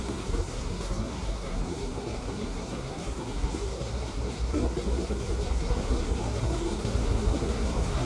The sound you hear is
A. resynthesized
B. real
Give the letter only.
A